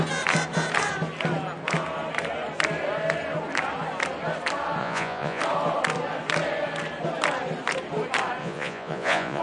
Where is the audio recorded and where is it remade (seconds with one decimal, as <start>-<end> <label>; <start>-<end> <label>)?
0.0-4.8 recorded; 4.8-5.4 remade; 5.4-8.4 recorded; 8.4-9.4 remade